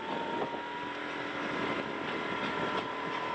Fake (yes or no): no